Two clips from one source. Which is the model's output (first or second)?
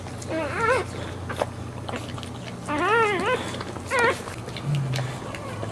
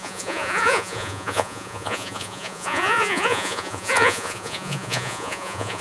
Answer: second